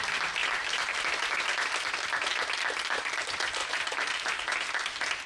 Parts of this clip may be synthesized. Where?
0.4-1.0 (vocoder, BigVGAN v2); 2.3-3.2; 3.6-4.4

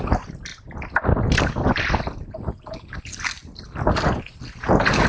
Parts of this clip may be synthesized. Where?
none